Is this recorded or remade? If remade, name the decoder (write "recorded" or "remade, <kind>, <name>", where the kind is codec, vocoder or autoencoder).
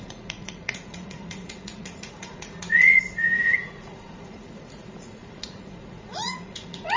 remade, vocoder, Vocos